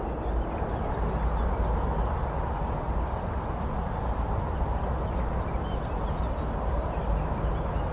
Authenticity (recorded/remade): recorded